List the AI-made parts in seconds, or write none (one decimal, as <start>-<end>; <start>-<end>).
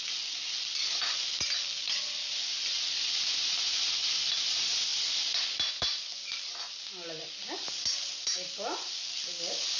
none